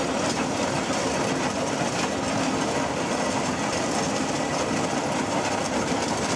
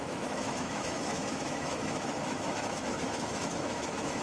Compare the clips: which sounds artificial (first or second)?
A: second